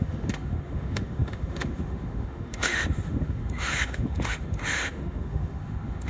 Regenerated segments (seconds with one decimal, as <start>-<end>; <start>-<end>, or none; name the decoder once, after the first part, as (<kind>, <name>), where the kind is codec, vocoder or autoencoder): 0.0-6.1 (autoencoder, DAC-VAE)